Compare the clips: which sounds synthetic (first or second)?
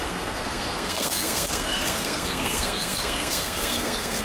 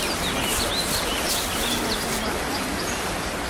first